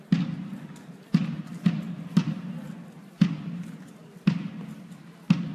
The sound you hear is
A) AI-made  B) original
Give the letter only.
B